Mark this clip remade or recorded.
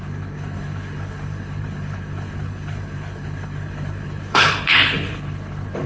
remade